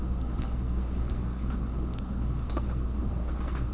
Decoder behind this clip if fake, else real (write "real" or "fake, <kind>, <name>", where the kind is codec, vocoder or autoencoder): fake, codec, SNAC